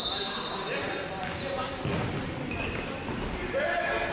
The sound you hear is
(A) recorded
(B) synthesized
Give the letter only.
A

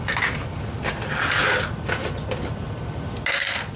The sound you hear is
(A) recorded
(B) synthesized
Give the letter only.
A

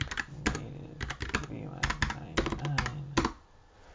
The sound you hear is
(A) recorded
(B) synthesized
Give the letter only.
A